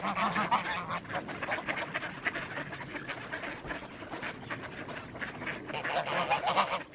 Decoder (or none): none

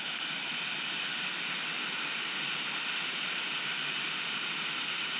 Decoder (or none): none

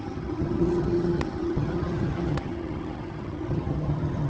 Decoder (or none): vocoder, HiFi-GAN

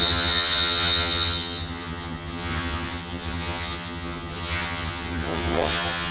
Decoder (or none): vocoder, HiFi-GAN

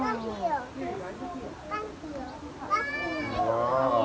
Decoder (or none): none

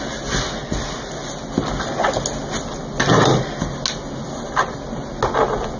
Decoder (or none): none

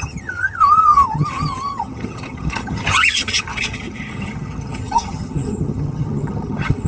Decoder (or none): vocoder, HiFi-GAN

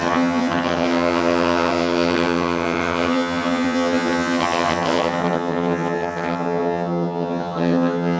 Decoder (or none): vocoder, HiFi-GAN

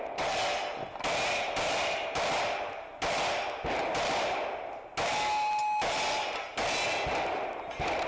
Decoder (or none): none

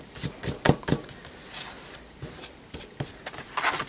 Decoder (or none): none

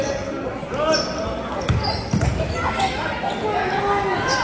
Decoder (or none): none